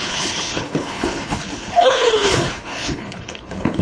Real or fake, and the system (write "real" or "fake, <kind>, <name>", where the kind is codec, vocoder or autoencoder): fake, codec, HILCodec